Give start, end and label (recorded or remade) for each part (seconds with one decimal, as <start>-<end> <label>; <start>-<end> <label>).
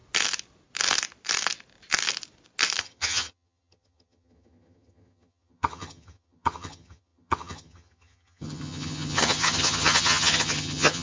0.0-2.8 recorded; 2.8-11.0 remade